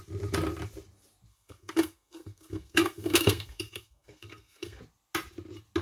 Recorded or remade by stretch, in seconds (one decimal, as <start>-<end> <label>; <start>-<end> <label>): 0.0-1.3 recorded; 1.3-4.8 remade; 4.8-5.8 recorded